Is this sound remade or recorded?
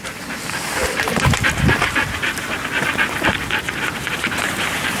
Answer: remade